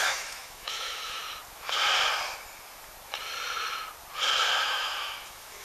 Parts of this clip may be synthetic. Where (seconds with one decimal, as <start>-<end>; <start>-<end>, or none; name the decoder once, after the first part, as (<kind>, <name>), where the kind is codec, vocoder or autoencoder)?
0.0-1.2 (autoencoder, DAC-VAE); 4.6-5.6